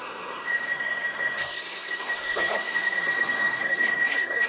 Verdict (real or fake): fake